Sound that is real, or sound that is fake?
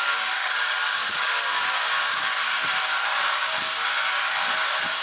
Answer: fake